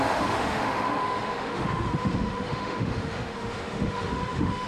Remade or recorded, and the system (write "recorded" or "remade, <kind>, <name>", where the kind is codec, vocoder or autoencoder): remade, autoencoder, DAC-VAE